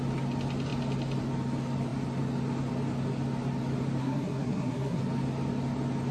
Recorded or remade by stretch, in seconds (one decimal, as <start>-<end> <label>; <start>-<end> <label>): 0.0-4.0 recorded; 4.0-5.0 remade; 5.0-6.1 recorded